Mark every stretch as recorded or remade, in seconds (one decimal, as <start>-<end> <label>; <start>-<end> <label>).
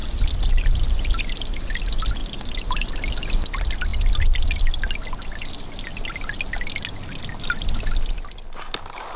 0.0-2.2 recorded; 2.2-3.3 remade; 3.3-9.2 recorded